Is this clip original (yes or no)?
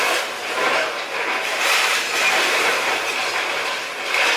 no